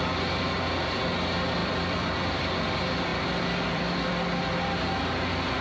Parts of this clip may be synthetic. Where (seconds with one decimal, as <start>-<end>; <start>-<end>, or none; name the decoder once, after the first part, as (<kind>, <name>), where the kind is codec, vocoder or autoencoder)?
1.6-2.4 (vocoder, BigVGAN v2)